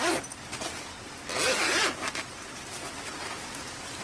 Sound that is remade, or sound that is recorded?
recorded